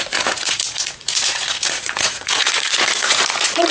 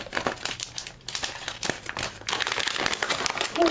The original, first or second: second